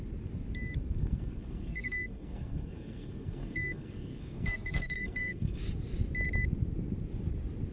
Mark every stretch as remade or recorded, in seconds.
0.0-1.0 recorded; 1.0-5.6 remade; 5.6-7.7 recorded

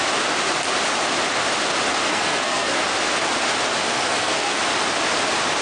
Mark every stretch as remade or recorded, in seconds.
0.0-2.1 recorded; 2.1-2.8 remade; 2.8-3.9 recorded; 3.9-4.6 remade; 4.6-5.6 recorded

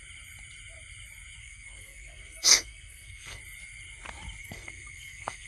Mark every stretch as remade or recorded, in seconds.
0.0-1.4 recorded; 1.4-3.4 remade; 3.4-4.4 recorded; 4.4-5.5 remade

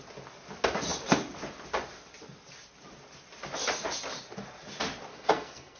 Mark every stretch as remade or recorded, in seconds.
0.0-5.1 recorded; 5.1-5.8 remade